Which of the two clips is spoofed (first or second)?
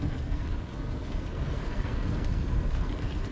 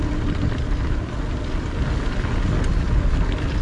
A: first